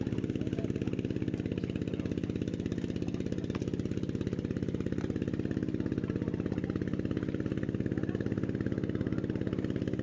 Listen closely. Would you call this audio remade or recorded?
recorded